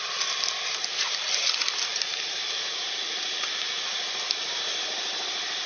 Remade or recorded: recorded